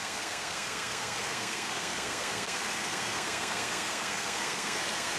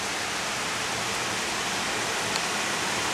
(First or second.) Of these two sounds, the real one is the second